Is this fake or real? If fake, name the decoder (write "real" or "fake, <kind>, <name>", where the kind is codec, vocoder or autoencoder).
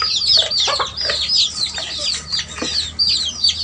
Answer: real